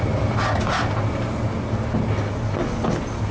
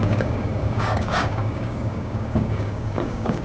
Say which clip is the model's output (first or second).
second